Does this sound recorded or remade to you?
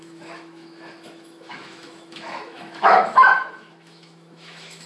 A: remade